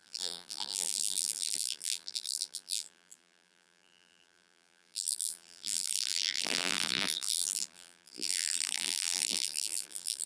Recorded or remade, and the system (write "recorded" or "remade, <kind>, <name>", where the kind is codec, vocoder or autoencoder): remade, vocoder, BigVGAN v2